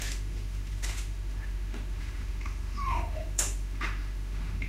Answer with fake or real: fake